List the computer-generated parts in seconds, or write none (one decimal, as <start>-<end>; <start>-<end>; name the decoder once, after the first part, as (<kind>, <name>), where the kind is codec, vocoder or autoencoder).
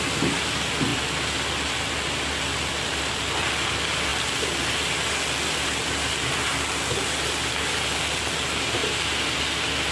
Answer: none